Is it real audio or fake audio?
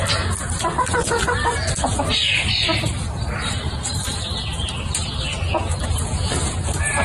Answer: real